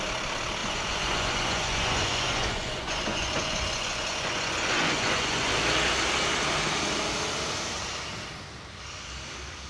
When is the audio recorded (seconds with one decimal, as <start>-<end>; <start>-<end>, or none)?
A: 0.0-0.6; 5.5-9.7